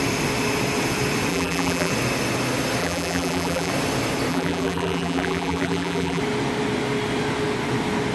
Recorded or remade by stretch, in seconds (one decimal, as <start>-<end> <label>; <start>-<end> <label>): 0.0-1.3 recorded; 1.3-1.9 remade; 1.9-2.8 recorded; 2.8-3.7 remade; 3.7-4.3 recorded; 4.3-6.2 remade; 6.2-8.1 recorded

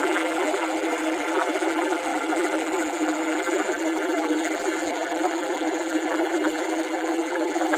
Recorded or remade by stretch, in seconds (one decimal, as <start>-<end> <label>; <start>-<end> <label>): 0.0-7.8 remade

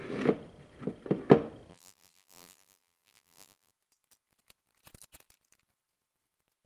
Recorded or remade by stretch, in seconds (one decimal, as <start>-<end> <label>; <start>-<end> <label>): 0.0-1.7 recorded; 1.7-3.7 remade; 3.7-6.7 recorded

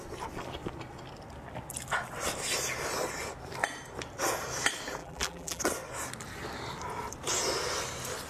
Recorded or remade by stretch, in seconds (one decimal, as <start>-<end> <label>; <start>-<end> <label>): 0.0-5.0 recorded; 5.0-5.6 remade; 5.6-8.3 recorded

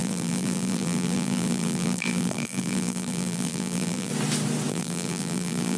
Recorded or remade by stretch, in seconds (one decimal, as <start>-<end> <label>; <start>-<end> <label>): 0.0-4.1 remade; 4.1-4.7 recorded; 4.7-5.8 remade

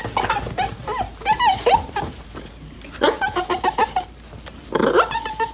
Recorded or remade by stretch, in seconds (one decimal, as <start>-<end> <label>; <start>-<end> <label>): 0.0-1.3 recorded; 1.3-4.6 remade; 4.6-5.5 recorded

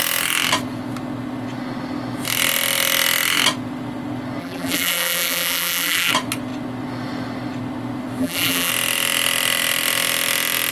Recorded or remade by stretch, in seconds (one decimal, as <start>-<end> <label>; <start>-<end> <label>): 0.0-4.4 recorded; 4.4-6.1 remade; 6.1-8.2 recorded; 8.2-8.7 remade; 8.7-10.7 recorded